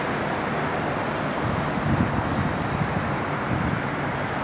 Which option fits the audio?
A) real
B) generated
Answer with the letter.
A